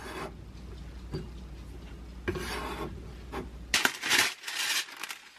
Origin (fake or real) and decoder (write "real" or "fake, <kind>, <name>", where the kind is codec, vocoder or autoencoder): real